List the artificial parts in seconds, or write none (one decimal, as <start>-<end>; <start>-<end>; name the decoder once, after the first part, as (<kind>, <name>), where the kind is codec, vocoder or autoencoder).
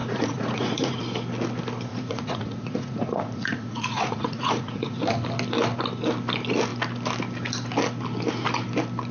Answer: 0.0-1.0 (vocoder, Vocos); 1.9-5.0